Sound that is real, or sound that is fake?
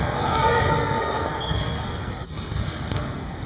fake